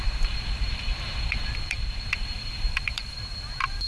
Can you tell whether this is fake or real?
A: fake